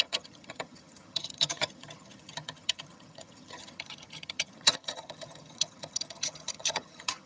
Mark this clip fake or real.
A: fake